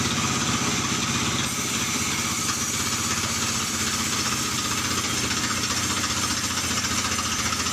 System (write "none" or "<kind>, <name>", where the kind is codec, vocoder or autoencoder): none